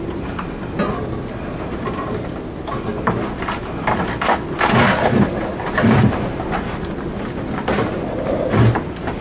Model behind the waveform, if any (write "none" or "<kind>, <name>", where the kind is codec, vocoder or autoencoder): none